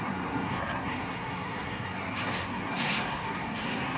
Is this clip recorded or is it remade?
remade